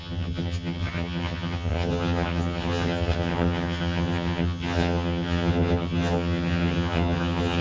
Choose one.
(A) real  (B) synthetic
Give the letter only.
B